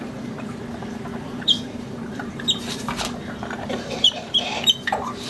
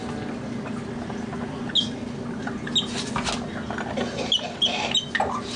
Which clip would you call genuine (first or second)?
second